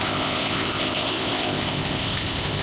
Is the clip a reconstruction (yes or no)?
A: yes